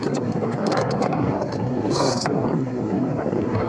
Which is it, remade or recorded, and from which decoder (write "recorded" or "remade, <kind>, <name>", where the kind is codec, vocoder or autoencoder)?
remade, codec, SNAC